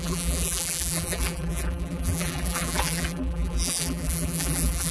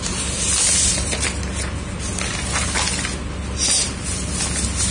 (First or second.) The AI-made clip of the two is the first